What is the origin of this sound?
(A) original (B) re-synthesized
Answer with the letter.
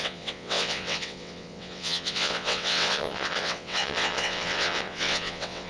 B